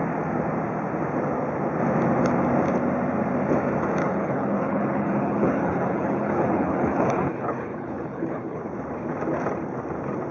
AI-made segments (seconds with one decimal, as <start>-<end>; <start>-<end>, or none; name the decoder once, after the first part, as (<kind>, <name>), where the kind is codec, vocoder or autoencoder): 4.0-8.6 (codec, HILCodec)